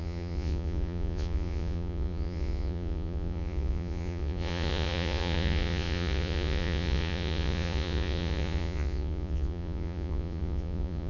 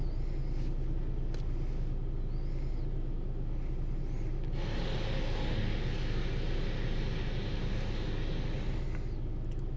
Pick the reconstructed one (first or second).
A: first